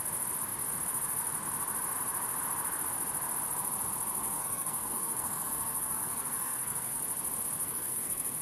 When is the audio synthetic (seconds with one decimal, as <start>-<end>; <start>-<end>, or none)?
4.2-7.0; 7.6-8.4